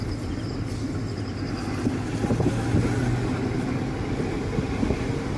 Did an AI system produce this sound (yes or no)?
no